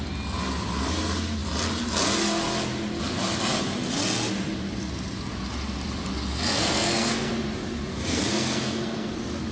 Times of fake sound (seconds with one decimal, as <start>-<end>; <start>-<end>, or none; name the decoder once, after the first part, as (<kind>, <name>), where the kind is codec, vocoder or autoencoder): 6.5-7.3 (codec, SNAC); 7.9-9.1